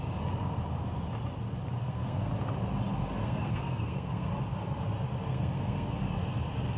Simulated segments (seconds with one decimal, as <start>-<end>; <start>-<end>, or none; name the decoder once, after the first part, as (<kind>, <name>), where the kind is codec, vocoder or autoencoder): 1.8-2.3 (codec, SNAC); 3.2-4.3; 5.3-6.0